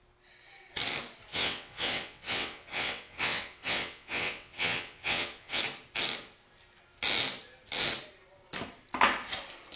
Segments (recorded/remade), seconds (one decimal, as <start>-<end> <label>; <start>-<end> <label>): 0.0-1.3 recorded; 1.3-5.6 remade; 5.6-9.8 recorded